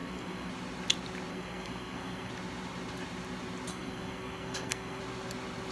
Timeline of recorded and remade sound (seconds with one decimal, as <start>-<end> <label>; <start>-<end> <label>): 0.0-0.5 remade; 0.5-1.3 recorded; 1.3-2.3 remade; 2.3-3.7 recorded; 3.7-5.0 remade; 5.0-5.7 recorded